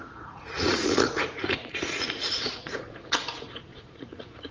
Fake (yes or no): yes